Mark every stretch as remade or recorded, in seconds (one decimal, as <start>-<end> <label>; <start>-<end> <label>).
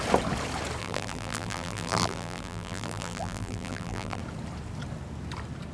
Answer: 0.0-0.8 recorded; 0.8-4.2 remade; 4.2-5.7 recorded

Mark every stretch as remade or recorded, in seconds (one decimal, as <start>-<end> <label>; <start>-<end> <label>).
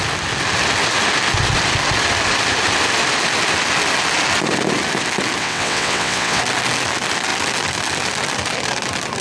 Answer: 0.0-5.4 recorded; 5.4-6.4 remade; 6.4-9.2 recorded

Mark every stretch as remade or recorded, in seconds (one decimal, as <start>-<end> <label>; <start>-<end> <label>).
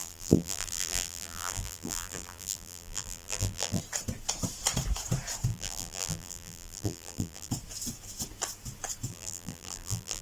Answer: 0.0-3.8 remade; 3.8-5.5 recorded; 5.5-7.5 remade; 7.5-9.1 recorded; 9.1-10.2 remade